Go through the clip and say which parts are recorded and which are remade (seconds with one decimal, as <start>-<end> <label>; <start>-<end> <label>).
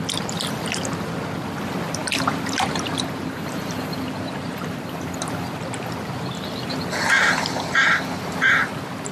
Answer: 0.0-2.0 recorded; 2.0-5.6 remade; 5.6-9.1 recorded